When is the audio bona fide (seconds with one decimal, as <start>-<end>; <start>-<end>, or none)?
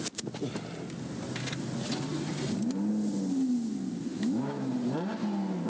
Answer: 0.0-4.1; 4.7-5.7